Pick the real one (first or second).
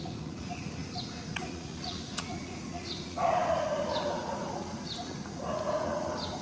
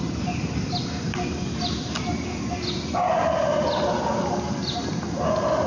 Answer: second